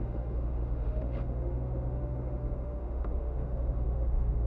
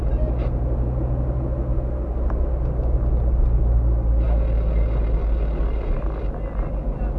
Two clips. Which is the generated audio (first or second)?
first